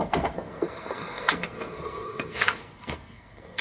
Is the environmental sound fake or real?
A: fake